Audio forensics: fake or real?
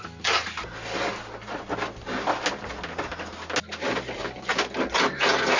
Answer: real